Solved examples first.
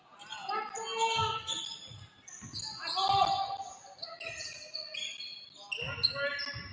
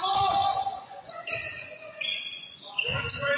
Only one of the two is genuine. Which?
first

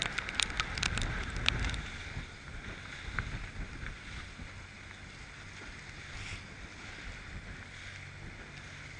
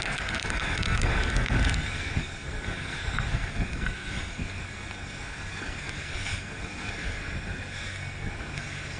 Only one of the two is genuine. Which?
first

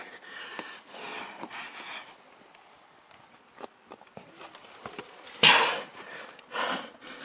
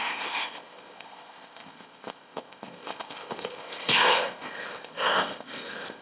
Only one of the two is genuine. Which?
first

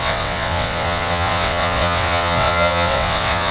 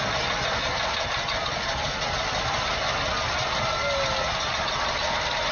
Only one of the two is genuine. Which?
second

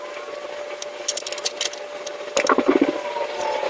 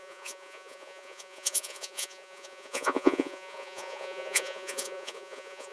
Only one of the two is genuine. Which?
first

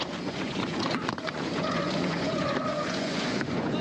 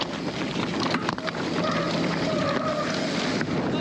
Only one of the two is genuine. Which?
second